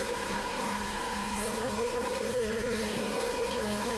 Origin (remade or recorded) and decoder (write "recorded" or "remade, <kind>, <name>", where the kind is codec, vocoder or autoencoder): remade, codec, SNAC